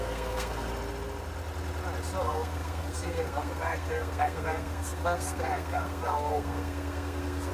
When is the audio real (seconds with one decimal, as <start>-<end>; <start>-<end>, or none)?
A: 0.7-2.2